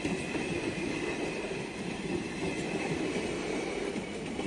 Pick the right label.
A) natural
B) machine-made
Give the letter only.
A